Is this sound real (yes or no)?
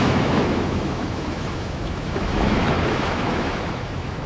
no